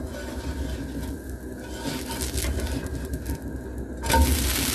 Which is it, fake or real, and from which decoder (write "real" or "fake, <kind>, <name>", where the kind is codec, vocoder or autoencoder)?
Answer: real